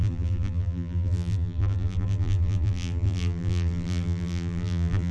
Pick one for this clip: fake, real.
fake